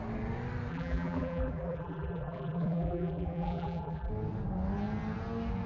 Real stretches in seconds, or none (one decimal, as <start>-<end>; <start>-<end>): 0.0-0.7; 4.1-5.7